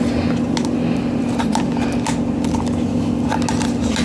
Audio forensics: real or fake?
real